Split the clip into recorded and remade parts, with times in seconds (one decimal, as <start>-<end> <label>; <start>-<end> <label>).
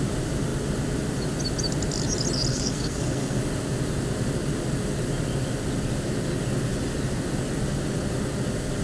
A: 0.0-2.5 recorded; 2.5-3.4 remade; 3.4-8.8 recorded